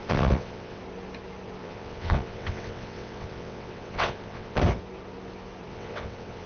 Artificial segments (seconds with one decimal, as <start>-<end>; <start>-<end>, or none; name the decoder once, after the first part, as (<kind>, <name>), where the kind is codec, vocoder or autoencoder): 0.0-0.8 (vocoder, WaveNeXt); 1.6-4.6; 5.7-6.5